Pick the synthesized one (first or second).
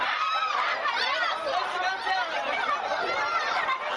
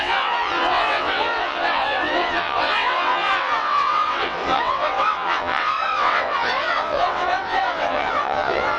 second